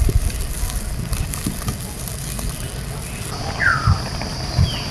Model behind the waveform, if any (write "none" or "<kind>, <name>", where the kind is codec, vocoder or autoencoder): none